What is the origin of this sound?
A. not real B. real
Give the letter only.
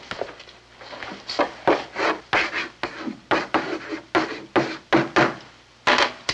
B